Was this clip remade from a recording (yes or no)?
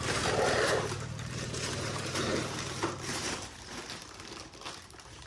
yes